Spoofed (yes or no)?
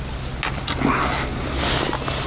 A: no